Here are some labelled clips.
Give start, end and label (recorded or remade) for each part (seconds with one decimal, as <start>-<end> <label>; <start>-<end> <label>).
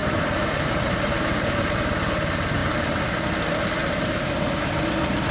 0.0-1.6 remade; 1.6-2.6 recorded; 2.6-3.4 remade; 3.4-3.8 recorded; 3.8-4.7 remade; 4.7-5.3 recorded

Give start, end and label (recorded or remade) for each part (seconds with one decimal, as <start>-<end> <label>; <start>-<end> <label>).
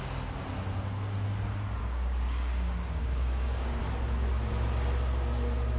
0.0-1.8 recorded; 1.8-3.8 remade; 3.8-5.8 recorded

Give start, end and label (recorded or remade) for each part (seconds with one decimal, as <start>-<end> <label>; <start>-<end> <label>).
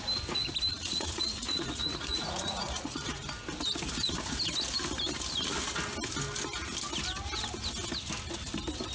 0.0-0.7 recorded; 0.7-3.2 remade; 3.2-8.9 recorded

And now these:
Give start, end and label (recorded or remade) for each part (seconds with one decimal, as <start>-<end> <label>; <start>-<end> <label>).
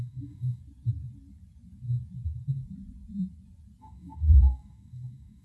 0.0-0.6 remade; 0.6-3.8 recorded; 3.8-5.4 remade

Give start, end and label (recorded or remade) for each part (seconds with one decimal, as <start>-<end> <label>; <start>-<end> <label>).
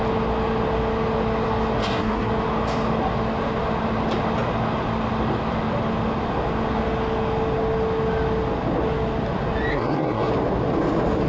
0.0-1.8 recorded; 1.8-2.3 remade; 2.3-9.7 recorded; 9.7-10.3 remade; 10.3-11.3 recorded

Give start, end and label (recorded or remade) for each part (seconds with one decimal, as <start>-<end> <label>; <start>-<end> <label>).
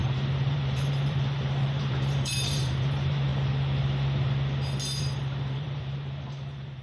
0.0-3.3 remade; 3.3-5.0 recorded; 5.0-6.8 remade